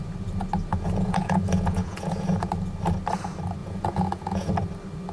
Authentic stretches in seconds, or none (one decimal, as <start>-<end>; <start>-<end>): 0.0-0.7; 2.5-3.6; 4.5-5.1